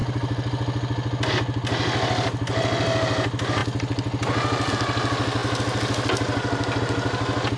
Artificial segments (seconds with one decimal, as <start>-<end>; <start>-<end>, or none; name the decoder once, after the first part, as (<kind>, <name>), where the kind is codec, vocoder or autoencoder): none

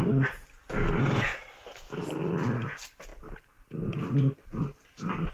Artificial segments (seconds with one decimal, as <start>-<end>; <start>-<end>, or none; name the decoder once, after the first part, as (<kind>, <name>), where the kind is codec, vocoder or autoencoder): none

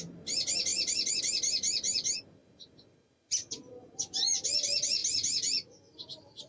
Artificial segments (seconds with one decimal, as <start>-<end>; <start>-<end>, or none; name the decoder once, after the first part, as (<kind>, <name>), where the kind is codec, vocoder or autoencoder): 2.4-3.7 (vocoder, BigVGAN v2)

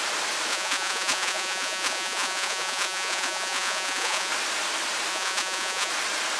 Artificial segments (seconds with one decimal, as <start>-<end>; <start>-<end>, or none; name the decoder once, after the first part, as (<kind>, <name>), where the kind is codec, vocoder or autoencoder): 0.5-4.3 (vocoder, Vocos); 5.1-5.9

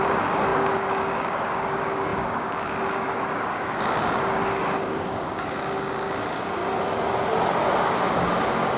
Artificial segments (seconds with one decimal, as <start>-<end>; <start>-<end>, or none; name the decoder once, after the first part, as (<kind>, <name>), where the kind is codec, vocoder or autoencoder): 0.0-6.6 (codec, DAC); 7.8-8.8